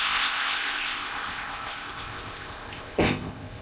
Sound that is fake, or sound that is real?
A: fake